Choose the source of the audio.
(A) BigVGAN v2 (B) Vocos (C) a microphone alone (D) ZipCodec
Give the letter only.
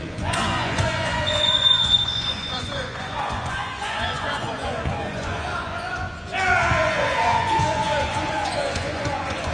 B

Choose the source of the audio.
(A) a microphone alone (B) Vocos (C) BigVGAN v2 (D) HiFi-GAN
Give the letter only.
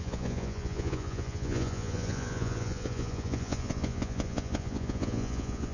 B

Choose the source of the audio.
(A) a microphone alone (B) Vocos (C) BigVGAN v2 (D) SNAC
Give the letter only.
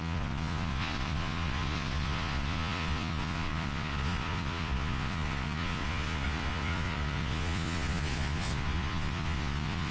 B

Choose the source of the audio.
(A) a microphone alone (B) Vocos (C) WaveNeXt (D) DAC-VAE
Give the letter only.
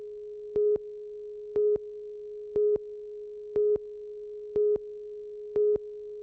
A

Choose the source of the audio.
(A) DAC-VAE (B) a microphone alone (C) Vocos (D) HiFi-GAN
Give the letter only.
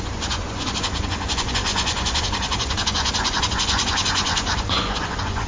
C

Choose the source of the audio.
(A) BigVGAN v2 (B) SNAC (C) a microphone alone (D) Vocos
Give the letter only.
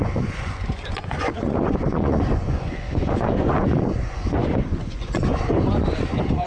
D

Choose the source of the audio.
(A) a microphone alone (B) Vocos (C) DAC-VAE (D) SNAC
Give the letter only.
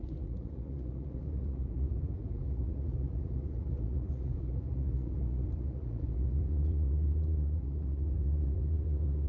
B